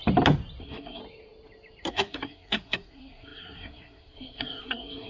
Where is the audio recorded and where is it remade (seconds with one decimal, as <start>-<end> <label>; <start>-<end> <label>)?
0.0-0.6 recorded; 0.6-1.0 remade; 1.0-1.9 recorded; 1.9-5.1 remade